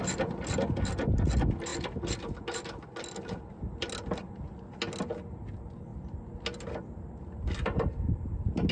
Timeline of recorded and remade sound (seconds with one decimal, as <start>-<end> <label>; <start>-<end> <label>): 0.0-8.7 recorded